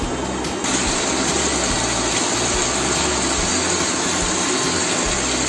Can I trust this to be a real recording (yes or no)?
yes